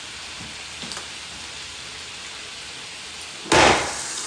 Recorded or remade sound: recorded